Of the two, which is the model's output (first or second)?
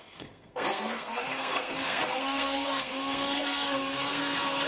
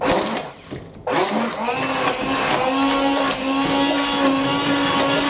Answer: first